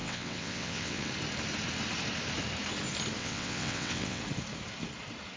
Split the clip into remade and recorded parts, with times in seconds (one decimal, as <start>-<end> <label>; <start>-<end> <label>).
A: 0.0-1.1 remade; 1.1-3.2 recorded; 3.2-4.2 remade; 4.2-5.4 recorded